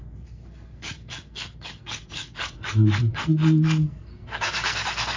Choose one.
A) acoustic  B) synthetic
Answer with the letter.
B